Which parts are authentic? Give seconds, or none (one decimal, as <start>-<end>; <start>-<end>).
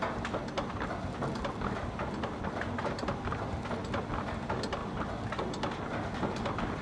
0.0-6.8